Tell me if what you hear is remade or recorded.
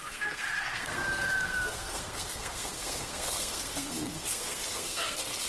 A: remade